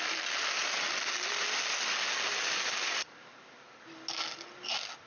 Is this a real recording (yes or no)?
yes